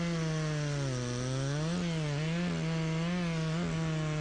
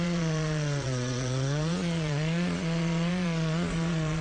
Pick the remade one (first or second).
second